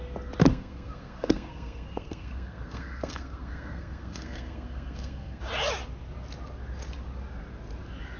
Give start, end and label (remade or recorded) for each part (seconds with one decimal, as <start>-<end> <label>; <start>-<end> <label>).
0.0-0.5 recorded; 0.5-5.4 remade; 5.4-8.2 recorded